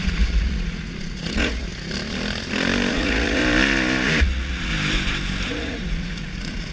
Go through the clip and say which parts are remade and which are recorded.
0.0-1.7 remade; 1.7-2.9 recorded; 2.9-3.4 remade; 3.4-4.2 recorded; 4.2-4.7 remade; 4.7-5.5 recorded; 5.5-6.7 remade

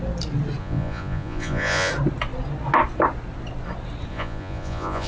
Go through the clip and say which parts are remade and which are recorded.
0.0-0.6 recorded; 0.6-1.9 remade; 1.9-4.1 recorded; 4.1-5.1 remade

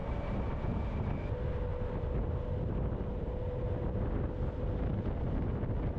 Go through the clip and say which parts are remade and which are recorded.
0.0-0.5 remade; 0.5-6.0 recorded

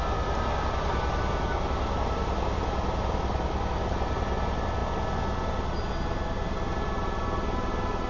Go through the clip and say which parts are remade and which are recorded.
0.0-8.1 recorded

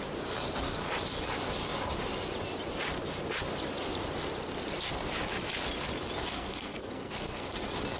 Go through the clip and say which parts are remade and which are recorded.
0.0-6.3 recorded; 6.3-7.5 remade; 7.5-8.0 recorded

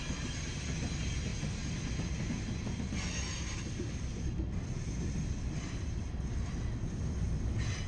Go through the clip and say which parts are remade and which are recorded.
0.0-7.9 recorded